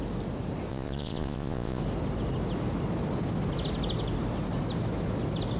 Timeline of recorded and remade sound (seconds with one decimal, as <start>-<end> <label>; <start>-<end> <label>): 0.0-0.7 recorded; 0.7-1.8 remade; 1.8-5.6 recorded